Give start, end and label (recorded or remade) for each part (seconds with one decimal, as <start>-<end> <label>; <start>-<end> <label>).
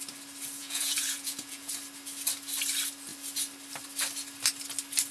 0.0-0.6 recorded; 0.6-1.7 remade; 1.7-5.1 recorded